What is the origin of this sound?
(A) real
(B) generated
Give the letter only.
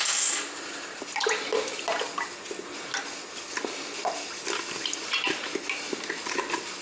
A